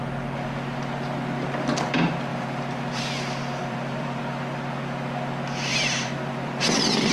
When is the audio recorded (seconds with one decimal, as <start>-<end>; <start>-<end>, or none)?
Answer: 0.0-2.3; 3.0-3.6; 4.2-5.7; 6.6-7.1